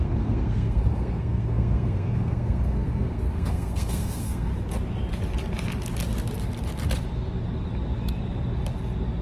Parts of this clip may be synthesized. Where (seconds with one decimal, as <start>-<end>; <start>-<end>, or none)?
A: 0.0-4.5